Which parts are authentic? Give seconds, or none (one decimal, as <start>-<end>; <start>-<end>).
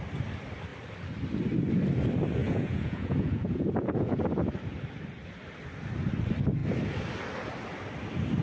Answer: 0.0-2.4; 4.2-8.4